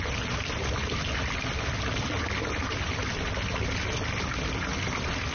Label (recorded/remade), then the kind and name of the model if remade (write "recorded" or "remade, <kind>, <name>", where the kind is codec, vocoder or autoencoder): recorded